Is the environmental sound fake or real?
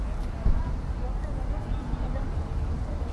real